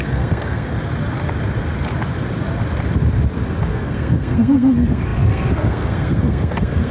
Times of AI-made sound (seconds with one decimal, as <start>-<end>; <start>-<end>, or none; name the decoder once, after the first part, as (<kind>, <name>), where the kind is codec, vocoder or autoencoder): 0.0-0.7 (codec, SNAC); 3.6-6.9